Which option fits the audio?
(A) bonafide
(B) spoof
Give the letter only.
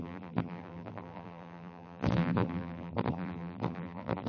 B